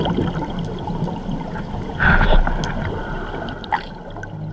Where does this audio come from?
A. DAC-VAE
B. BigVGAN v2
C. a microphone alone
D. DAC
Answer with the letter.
C